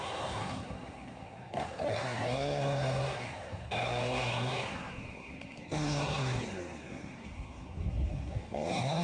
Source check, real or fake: fake